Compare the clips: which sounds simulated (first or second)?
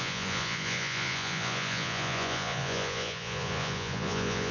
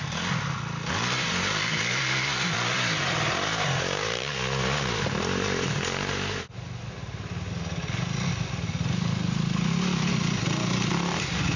first